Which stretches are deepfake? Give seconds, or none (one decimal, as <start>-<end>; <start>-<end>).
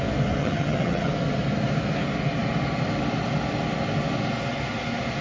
0.4-1.1